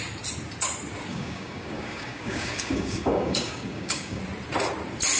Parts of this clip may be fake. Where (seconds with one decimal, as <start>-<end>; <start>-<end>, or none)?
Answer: 1.1-4.2